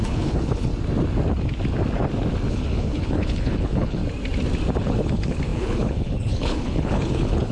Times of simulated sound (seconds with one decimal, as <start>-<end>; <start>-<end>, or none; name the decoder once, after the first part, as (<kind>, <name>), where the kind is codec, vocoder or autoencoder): 0.0-0.7 (codec, HILCodec); 2.5-4.0; 4.8-7.5